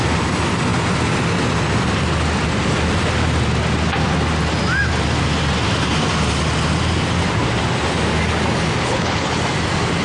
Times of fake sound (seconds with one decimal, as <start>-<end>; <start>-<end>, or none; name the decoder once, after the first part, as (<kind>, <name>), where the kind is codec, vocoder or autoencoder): 8.8-9.4 (codec, HILCodec)